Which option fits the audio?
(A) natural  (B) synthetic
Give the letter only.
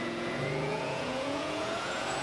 B